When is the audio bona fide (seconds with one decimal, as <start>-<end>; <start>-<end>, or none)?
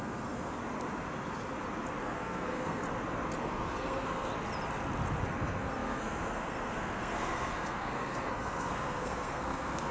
0.6-2.0; 2.8-3.4; 4.3-5.3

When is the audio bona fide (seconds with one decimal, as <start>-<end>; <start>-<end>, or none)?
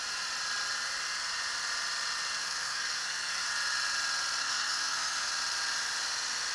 0.0-2.4; 3.4-4.4; 5.3-6.5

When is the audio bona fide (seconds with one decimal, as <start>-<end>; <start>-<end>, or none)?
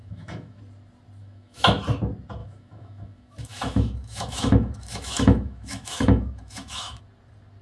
0.6-1.2; 1.8-2.4; 7.0-7.6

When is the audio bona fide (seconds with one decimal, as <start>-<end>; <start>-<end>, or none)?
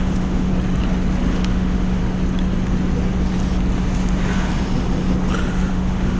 0.5-1.3; 2.0-5.7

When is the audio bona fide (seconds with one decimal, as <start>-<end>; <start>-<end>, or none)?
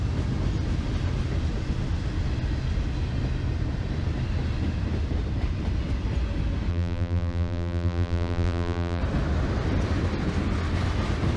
0.0-6.7; 9.0-11.4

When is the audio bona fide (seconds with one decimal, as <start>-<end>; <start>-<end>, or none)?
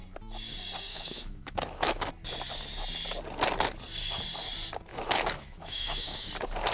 0.0-0.9; 2.1-4.9; 6.3-6.7